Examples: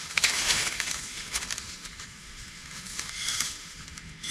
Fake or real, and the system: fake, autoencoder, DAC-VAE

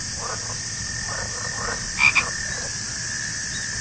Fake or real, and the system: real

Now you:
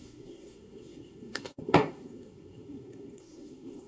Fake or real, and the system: fake, codec, SNAC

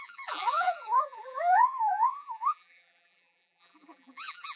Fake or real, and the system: fake, vocoder, BigVGAN v2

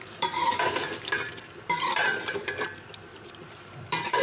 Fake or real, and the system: fake, vocoder, BigVGAN v2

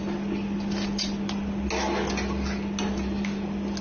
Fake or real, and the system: real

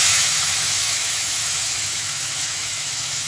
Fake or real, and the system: fake, autoencoder, DAC-VAE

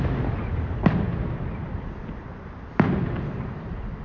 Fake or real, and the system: real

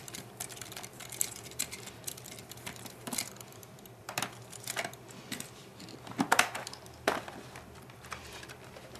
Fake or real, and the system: fake, vocoder, BigVGAN v2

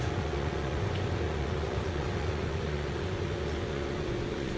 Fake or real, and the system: fake, vocoder, Vocos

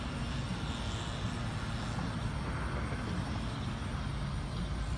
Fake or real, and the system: real